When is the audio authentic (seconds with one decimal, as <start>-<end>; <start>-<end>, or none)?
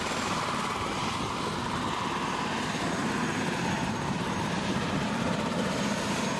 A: 1.0-3.9